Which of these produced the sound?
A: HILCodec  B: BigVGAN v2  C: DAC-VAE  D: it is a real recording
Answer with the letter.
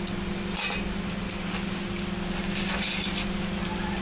D